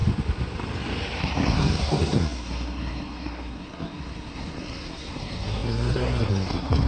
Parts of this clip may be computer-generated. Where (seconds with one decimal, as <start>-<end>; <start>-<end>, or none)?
1.2-6.9